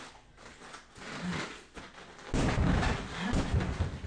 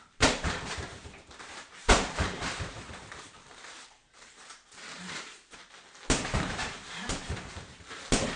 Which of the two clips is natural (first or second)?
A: first